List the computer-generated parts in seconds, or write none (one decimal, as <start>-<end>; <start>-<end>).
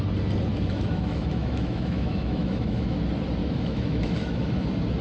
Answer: 0.5-3.0; 3.4-4.5